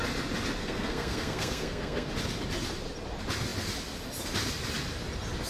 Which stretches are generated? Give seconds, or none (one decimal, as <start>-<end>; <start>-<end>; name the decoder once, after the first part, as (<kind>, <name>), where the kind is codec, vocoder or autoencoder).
0.6-2.1 (codec, SNAC)